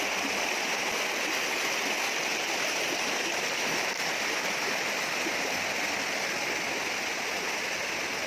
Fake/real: real